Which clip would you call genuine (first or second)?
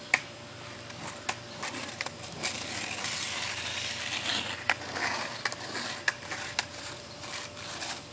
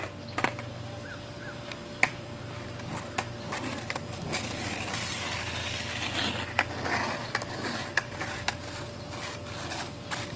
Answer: second